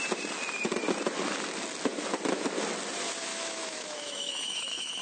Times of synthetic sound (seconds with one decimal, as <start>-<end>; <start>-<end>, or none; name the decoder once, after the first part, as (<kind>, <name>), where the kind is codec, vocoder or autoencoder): 3.3-5.0 (autoencoder, DAC-VAE)